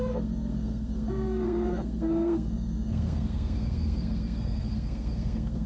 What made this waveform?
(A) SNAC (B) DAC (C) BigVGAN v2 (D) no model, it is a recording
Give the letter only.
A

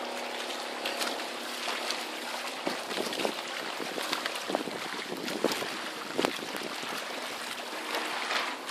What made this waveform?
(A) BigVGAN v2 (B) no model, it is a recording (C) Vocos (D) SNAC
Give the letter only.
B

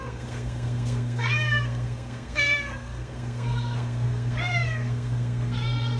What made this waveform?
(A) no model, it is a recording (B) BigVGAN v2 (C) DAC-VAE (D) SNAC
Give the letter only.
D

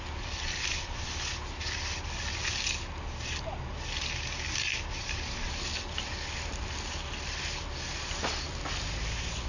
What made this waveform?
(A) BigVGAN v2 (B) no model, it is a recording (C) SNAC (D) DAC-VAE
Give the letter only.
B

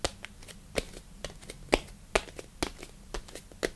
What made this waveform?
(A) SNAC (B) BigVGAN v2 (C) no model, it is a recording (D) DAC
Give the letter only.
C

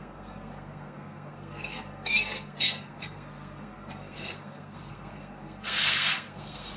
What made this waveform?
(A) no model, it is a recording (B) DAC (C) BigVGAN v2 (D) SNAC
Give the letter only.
D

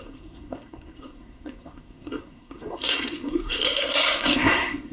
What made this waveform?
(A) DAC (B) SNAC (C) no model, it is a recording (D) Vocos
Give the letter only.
B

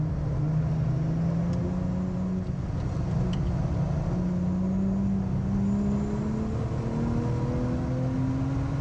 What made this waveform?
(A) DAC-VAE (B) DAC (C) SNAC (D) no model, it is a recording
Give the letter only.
D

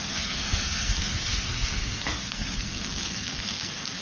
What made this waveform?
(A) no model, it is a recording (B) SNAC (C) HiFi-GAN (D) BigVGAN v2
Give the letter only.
B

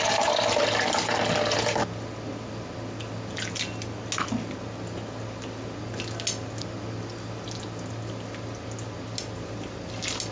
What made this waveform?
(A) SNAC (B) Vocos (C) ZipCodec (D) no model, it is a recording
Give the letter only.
D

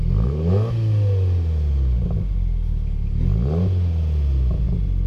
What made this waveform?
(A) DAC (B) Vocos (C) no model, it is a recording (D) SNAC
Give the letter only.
C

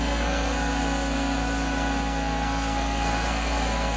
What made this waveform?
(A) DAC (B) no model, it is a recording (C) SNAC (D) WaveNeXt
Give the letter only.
C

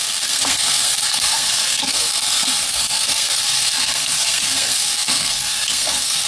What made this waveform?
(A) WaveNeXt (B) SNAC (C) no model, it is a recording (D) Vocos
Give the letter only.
B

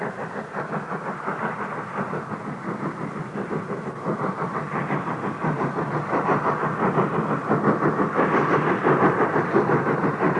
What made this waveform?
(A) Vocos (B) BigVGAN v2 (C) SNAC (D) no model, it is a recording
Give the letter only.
D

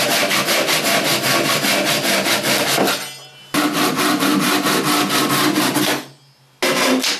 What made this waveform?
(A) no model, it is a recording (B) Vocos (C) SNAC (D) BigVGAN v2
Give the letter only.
A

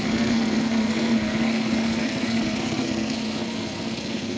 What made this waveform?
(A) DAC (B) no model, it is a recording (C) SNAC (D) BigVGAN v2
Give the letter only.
C